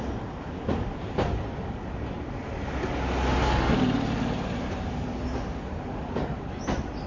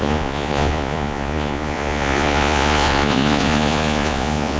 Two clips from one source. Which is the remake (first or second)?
second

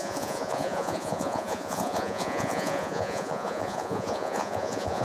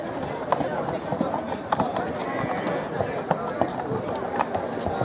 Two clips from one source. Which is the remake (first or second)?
first